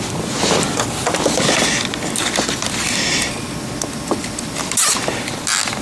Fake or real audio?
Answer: real